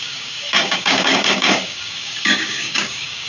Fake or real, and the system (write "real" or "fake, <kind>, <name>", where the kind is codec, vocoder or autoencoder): fake, codec, DAC